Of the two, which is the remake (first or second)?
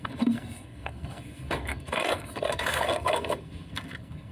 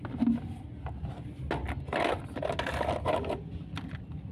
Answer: first